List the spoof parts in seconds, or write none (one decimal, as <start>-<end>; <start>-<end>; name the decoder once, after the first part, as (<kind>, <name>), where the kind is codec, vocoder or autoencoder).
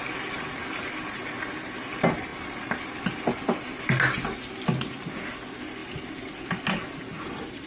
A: none